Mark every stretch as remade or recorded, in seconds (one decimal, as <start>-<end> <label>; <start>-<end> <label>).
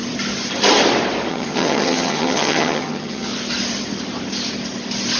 0.0-1.3 recorded; 1.3-3.3 remade; 3.3-5.2 recorded